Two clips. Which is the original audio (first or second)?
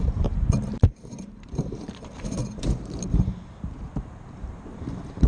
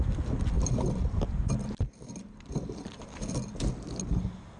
second